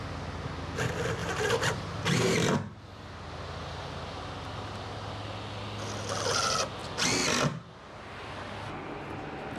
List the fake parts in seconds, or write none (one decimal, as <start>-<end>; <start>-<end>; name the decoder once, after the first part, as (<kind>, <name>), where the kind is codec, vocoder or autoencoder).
1.2-2.9 (vocoder, BigVGAN v2)